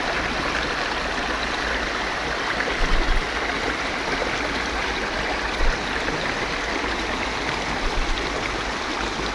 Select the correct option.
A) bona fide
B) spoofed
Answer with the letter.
A